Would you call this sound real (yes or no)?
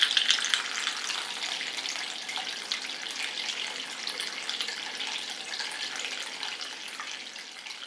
yes